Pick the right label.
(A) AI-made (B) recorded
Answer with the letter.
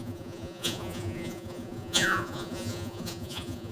A